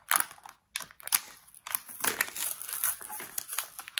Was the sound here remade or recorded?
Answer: recorded